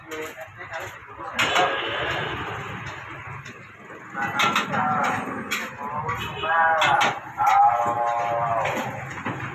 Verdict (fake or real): real